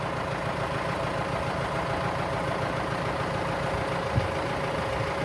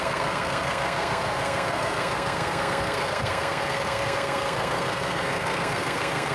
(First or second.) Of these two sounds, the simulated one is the second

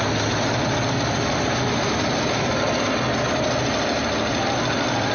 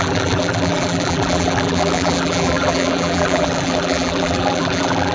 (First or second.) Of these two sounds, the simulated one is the second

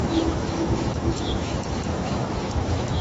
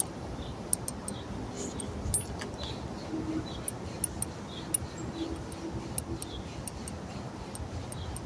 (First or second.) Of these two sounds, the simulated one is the first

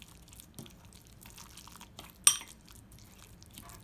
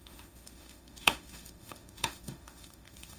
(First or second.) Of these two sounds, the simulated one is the second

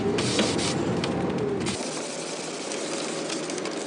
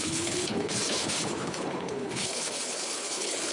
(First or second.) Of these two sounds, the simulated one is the second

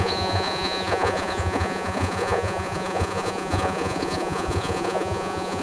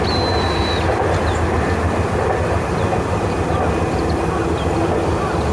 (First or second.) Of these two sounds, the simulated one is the first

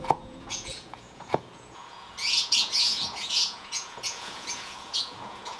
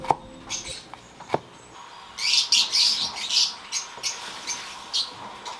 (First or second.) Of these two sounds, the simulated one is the first